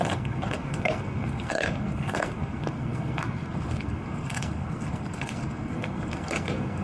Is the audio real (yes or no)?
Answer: no